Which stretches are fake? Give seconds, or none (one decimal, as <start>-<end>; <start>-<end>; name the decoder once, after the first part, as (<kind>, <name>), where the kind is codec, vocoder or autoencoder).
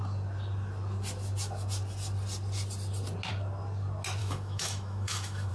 4.2-5.5 (autoencoder, DAC-VAE)